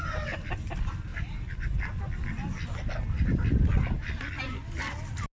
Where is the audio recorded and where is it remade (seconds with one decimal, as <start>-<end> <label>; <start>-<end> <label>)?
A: 0.0-5.3 recorded